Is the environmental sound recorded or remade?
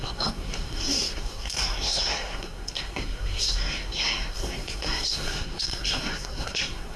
remade